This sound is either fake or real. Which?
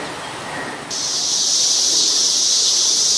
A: real